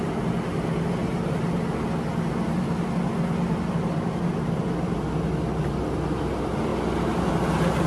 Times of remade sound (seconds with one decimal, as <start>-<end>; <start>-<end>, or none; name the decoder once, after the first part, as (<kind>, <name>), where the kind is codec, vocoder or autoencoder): none